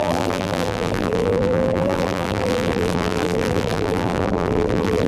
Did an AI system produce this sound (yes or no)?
yes